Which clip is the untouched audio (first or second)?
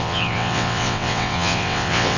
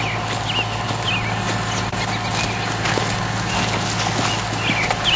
second